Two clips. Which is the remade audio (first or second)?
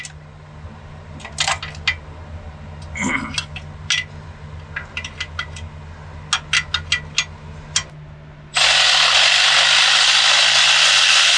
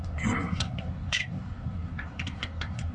second